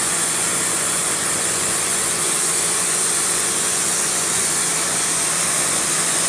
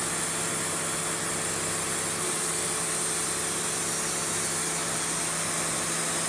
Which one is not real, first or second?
first